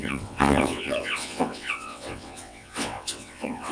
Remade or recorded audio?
remade